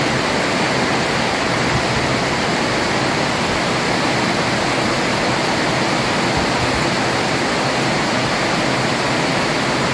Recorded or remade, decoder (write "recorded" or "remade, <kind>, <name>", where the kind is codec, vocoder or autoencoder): recorded